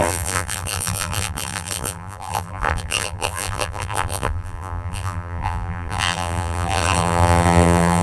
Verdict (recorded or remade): remade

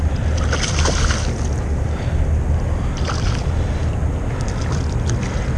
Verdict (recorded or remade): recorded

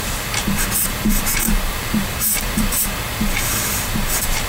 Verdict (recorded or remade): remade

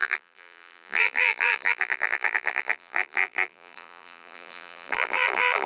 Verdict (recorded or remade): remade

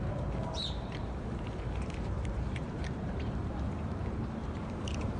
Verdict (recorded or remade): remade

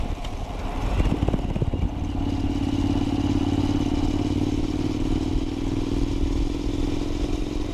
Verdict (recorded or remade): recorded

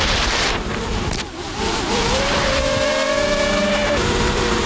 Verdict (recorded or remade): remade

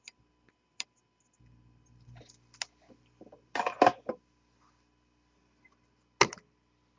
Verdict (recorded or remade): recorded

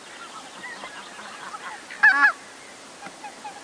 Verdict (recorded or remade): recorded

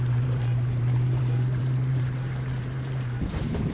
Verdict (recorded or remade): remade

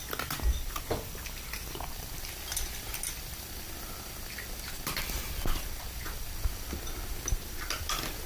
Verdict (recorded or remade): recorded